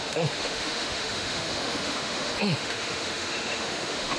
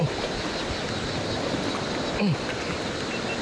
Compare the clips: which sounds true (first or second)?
second